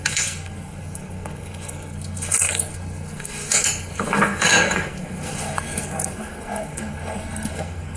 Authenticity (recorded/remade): remade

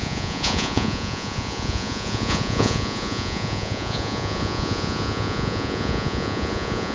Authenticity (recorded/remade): remade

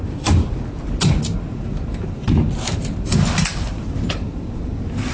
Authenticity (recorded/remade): recorded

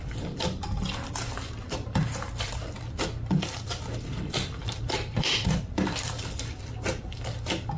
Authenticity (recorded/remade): remade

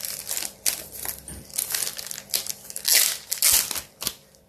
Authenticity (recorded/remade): recorded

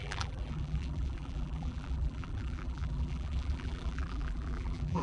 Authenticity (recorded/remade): remade